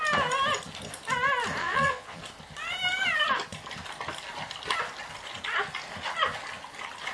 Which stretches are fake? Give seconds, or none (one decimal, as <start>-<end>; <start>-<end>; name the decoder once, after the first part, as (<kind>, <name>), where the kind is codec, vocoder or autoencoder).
1.6-2.2 (vocoder, Vocos)